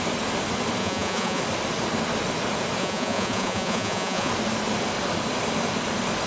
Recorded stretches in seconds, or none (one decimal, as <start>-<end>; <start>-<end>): 0.0-0.8; 1.4-2.8; 4.3-6.3